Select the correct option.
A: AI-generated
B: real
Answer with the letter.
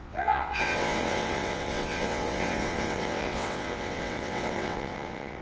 A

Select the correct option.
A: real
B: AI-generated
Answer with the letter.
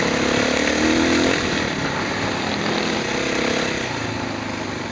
A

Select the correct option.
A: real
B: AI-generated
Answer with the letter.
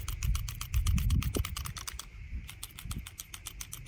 A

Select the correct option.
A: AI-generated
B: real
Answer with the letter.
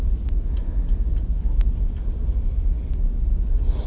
B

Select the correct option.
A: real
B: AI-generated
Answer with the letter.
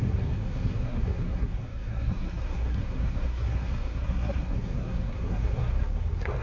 B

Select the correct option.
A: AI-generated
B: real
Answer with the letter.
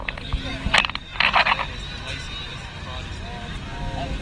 B